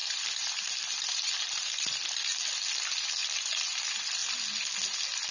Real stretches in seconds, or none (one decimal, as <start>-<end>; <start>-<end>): 0.0-5.3